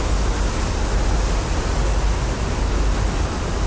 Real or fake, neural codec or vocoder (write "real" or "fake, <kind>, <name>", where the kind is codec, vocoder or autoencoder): real